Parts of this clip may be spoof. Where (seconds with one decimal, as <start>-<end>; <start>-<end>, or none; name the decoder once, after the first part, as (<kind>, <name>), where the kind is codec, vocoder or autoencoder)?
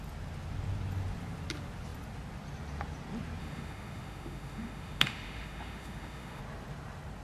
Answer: 3.4-6.4 (autoencoder, DAC-VAE)